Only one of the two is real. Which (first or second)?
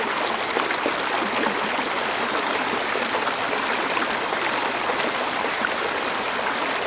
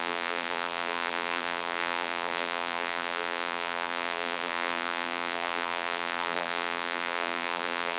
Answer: first